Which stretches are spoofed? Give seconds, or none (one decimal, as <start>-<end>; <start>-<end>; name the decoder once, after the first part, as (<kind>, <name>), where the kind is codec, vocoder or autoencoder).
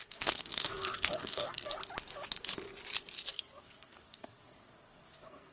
0.0-1.8 (codec, SNAC); 3.3-5.5